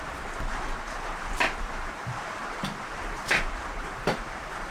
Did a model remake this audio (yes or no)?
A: yes